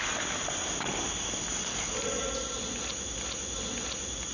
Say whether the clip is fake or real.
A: real